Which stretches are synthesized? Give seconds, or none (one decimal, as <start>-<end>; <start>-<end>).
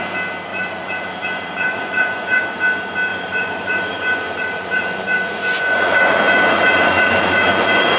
0.5-2.4; 3.1-8.0